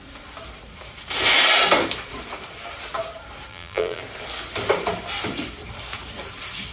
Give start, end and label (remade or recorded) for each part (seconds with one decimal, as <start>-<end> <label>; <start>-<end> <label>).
0.0-3.5 recorded; 3.5-4.0 remade; 4.0-6.7 recorded